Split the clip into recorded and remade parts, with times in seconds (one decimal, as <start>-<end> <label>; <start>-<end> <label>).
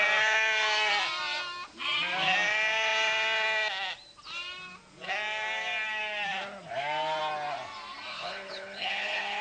0.0-8.1 recorded; 8.1-9.4 remade